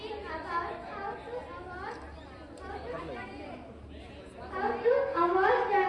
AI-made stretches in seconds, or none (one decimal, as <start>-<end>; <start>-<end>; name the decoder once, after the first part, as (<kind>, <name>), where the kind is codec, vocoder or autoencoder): none